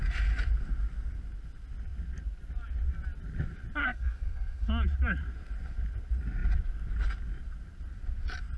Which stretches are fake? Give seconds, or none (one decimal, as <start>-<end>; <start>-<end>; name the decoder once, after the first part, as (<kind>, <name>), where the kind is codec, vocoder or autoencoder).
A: 3.8-4.7 (codec, SNAC)